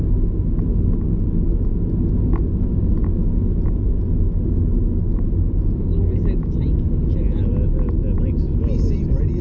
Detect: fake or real real